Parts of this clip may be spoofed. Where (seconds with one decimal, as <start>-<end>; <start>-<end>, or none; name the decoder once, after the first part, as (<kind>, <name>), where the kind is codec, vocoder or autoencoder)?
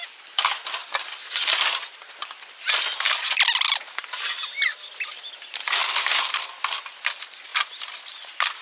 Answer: none